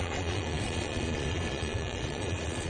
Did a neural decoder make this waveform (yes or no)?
yes